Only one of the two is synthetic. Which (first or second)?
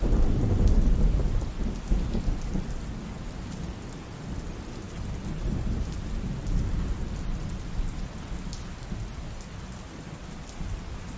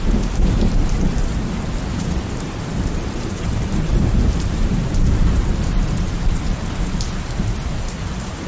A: second